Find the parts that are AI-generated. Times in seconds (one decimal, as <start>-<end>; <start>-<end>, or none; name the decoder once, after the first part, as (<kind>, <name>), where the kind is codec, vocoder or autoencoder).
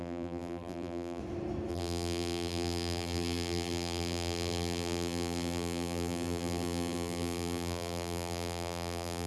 0.0-1.2 (vocoder, BigVGAN v2); 1.7-9.3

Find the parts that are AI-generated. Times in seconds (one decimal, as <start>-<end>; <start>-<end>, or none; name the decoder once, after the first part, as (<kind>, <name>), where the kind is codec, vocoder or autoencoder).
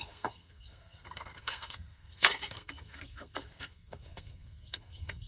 0.0-5.3 (codec, SNAC)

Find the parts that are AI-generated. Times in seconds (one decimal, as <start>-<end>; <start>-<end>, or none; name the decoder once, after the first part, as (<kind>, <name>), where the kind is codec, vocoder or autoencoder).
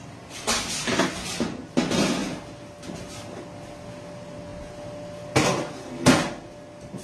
none